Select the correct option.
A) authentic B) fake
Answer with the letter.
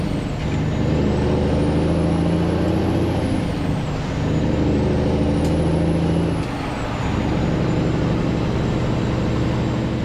A